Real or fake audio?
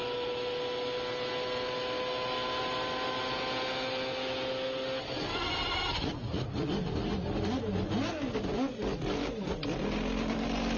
real